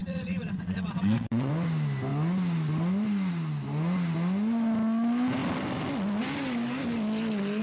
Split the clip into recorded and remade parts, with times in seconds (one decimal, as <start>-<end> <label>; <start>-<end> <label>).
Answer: 0.0-1.5 remade; 1.5-7.6 recorded